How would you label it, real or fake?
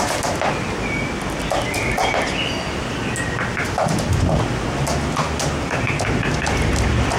real